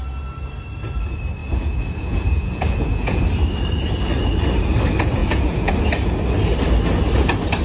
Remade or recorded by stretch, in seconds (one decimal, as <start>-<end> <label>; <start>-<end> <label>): 0.0-1.4 recorded; 1.4-3.2 remade; 3.2-5.2 recorded; 5.2-5.7 remade; 5.7-7.6 recorded